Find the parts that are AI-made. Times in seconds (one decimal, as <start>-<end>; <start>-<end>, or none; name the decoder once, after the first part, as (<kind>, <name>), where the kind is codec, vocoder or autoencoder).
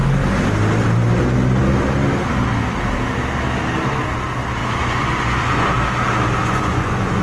4.6-5.7 (vocoder, Vocos); 6.4-7.2